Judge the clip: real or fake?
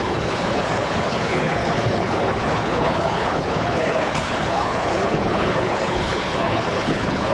fake